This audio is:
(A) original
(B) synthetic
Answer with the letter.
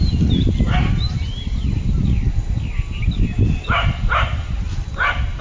A